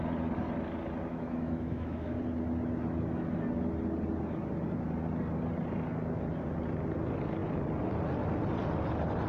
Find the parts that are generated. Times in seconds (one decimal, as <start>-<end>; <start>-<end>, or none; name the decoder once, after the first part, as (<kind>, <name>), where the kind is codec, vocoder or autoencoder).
1.1-2.2 (autoencoder, DAC-VAE)